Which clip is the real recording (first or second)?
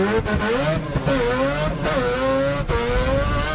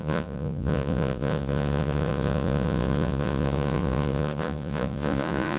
first